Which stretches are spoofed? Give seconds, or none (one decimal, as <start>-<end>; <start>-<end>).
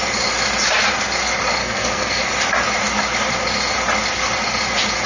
1.6-2.2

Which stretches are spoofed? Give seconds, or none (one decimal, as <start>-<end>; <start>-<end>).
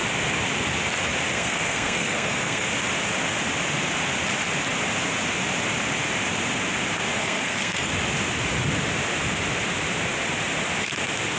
1.3-2.7; 7.2-7.9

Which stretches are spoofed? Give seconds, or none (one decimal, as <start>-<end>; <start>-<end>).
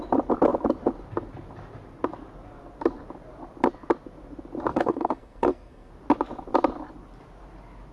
4.7-5.9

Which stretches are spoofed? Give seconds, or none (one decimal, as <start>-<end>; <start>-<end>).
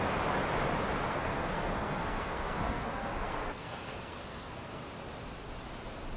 1.1-4.8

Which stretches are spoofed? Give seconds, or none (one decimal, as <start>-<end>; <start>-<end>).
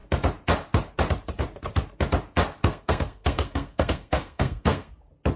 2.6-4.9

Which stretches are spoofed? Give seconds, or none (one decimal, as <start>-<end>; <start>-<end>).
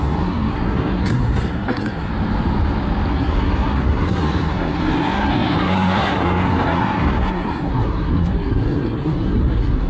0.0-2.1; 3.1-9.9